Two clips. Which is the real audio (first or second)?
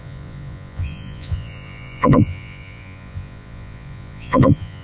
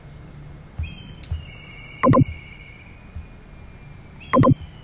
second